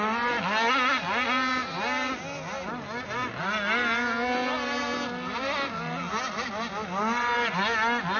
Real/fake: real